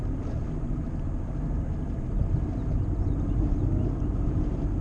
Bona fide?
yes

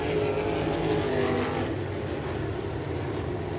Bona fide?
yes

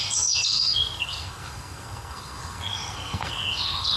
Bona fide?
no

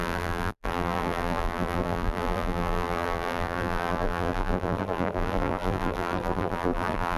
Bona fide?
no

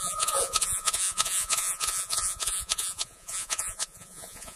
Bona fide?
no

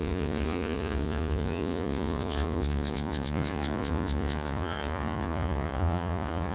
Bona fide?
no